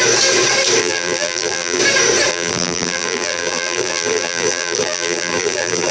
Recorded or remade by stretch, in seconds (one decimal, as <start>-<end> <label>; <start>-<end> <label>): 0.0-0.8 recorded; 0.8-1.8 remade; 1.8-2.3 recorded; 2.3-5.9 remade